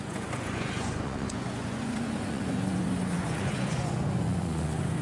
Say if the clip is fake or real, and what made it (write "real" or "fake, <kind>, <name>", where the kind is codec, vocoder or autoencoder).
fake, vocoder, Vocos